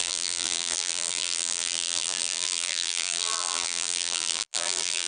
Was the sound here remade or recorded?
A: remade